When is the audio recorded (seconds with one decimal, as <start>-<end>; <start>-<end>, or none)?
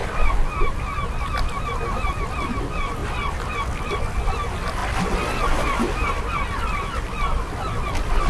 0.0-8.3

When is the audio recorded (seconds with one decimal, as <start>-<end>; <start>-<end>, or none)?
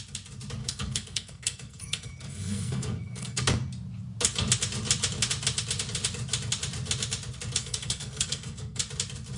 0.0-0.6; 3.4-7.6; 8.8-9.4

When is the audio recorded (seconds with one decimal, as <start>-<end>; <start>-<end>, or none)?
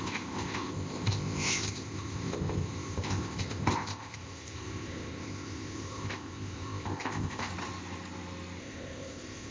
7.5-8.6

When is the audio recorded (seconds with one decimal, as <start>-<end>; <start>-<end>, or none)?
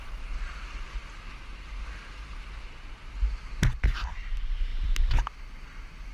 0.0-6.1